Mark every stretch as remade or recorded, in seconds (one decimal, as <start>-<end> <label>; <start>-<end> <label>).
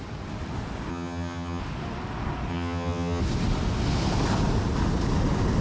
0.0-0.9 recorded; 0.9-1.6 remade; 1.6-2.5 recorded; 2.5-3.2 remade; 3.2-5.6 recorded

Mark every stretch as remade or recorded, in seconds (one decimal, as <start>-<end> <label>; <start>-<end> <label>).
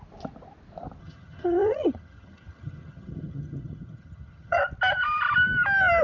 0.0-1.0 recorded; 1.0-4.6 remade; 4.6-6.0 recorded